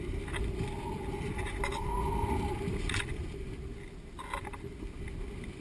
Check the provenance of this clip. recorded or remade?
recorded